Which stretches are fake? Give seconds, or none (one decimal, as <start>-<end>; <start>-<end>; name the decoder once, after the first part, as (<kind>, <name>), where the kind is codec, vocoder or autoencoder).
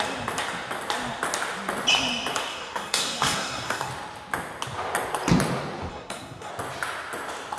2.5-3.9 (codec, SNAC); 5.9-6.5